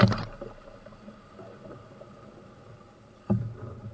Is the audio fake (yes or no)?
no